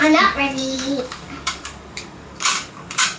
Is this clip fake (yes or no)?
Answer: yes